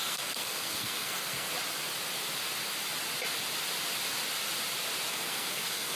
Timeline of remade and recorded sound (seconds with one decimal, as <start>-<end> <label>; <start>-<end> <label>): 0.0-1.5 remade; 1.5-5.1 recorded; 5.1-6.0 remade